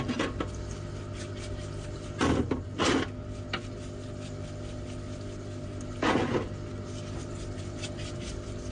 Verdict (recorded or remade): recorded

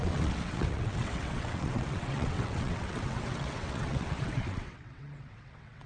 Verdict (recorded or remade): remade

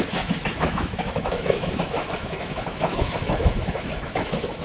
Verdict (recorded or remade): remade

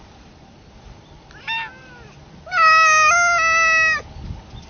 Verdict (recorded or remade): recorded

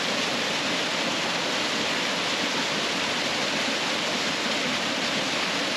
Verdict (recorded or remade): recorded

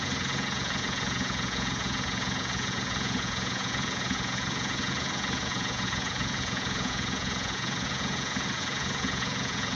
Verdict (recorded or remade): remade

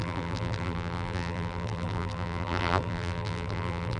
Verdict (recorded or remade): remade